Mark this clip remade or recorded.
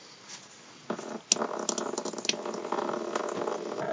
recorded